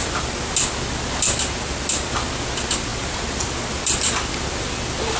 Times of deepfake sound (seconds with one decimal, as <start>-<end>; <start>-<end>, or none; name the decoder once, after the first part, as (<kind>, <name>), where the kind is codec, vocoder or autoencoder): none

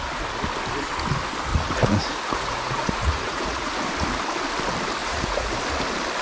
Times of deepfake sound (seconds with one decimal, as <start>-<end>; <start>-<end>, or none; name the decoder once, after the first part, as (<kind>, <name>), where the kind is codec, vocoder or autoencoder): 1.5-3.7 (vocoder, Vocos); 5.0-5.5

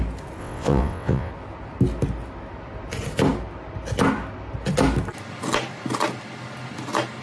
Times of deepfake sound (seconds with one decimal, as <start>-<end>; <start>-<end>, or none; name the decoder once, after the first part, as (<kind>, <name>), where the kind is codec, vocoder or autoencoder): 0.4-1.3 (vocoder, WaveNeXt)

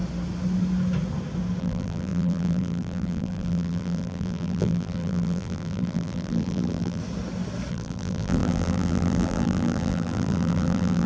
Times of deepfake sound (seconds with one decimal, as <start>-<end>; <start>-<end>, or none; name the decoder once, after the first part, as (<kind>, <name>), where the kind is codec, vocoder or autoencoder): 1.6-7.0 (vocoder, BigVGAN v2); 7.7-11.1

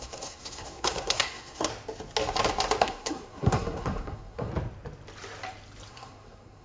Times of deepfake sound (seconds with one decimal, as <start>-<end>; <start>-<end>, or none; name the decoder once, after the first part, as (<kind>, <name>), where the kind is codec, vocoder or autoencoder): 0.0-1.7 (codec, SNAC); 2.8-4.5; 5.9-6.6